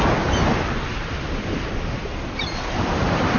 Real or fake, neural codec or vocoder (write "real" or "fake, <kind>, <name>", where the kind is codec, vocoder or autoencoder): real